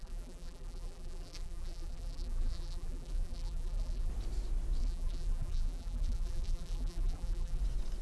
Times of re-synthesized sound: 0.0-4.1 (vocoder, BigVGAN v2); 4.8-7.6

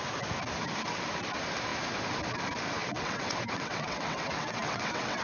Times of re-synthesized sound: 2.8-5.2 (vocoder, WaveNeXt)

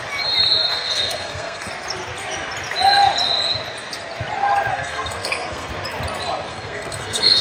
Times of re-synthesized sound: 0.7-1.7 (codec, SNAC); 4.7-5.7; 6.5-7.4

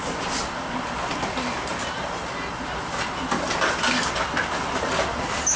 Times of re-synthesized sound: none

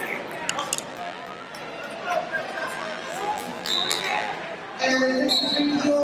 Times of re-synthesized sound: 0.9-1.5 (vocoder, BigVGAN v2); 2.7-4.3

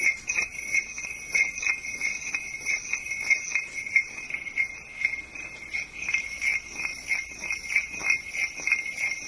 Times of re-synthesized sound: 0.0-0.8 (vocoder, BigVGAN v2); 5.3-6.5

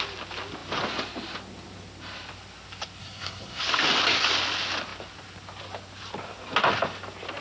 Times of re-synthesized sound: 3.0-3.6 (codec, SNAC)

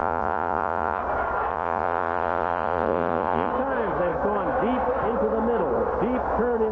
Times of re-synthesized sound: 0.0-1.0 (vocoder, Vocos); 1.5-3.5